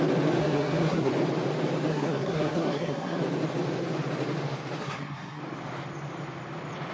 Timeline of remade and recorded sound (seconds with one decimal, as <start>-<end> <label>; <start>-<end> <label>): 0.0-0.4 recorded; 0.4-1.1 remade; 1.1-1.9 recorded; 1.9-3.2 remade; 3.2-4.8 recorded; 4.8-5.4 remade; 5.4-6.9 recorded